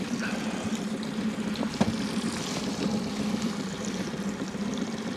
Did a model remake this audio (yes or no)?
no